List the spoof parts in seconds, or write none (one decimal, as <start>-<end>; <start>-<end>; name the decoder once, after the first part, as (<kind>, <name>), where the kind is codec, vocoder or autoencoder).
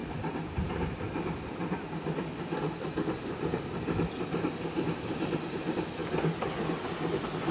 0.0-4.5 (vocoder, BigVGAN v2)